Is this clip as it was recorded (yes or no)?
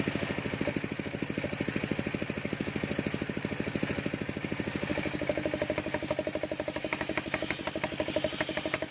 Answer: yes